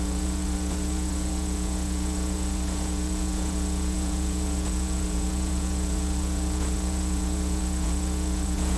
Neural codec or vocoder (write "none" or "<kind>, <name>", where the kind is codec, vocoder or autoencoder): vocoder, Vocos